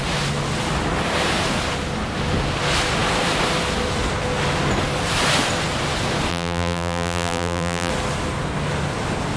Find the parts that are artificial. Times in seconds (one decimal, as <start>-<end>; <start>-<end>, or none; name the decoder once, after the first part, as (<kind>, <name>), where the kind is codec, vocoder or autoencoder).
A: 6.3-7.9 (vocoder, BigVGAN v2)